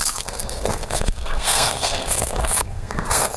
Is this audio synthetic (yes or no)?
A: yes